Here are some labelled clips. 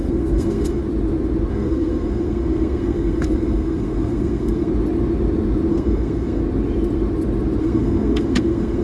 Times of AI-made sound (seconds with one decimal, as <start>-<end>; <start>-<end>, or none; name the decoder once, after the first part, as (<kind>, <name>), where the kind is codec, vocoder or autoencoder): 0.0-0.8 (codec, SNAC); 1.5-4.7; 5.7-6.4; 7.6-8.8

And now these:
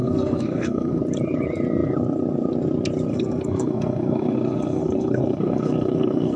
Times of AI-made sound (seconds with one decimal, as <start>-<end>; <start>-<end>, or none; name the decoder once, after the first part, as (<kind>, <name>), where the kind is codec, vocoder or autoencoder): 0.0-1.0 (codec, SNAC); 3.1-6.4

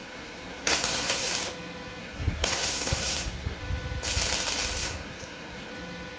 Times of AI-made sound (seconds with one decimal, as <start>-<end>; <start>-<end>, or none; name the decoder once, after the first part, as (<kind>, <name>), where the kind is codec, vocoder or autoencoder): 0.0-1.3 (codec, SNAC); 2.0-3.6; 4.8-5.7